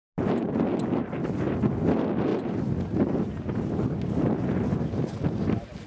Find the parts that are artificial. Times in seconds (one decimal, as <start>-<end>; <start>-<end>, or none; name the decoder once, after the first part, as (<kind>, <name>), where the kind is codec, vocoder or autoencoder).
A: none